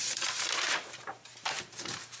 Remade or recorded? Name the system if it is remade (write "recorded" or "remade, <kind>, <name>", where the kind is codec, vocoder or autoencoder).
remade, vocoder, BigVGAN v2